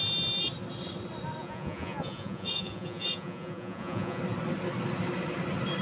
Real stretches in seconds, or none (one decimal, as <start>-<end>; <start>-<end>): 0.0-1.4; 4.2-5.8